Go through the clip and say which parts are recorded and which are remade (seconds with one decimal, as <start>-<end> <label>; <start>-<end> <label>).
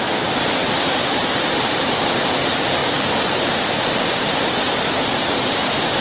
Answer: 0.0-1.0 recorded; 1.0-1.6 remade; 1.6-2.8 recorded; 2.8-4.5 remade; 4.5-6.0 recorded